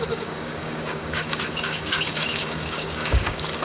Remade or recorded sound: remade